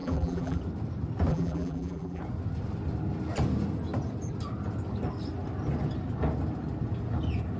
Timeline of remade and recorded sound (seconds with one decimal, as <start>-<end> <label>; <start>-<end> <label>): 0.0-0.6 remade; 0.6-1.3 recorded; 1.3-2.2 remade; 2.2-7.6 recorded